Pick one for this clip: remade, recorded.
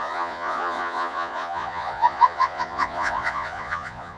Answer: remade